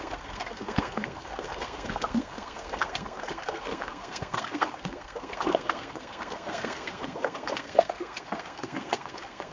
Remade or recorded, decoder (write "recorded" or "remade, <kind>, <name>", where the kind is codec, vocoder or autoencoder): remade, codec, SNAC